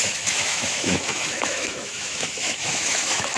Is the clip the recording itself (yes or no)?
no